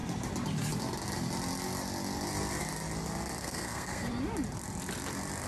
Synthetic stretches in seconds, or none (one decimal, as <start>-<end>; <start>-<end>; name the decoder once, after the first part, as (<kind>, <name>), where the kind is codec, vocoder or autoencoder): 3.4-4.1 (codec, SNAC)